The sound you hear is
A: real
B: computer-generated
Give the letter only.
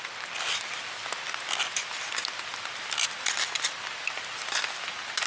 A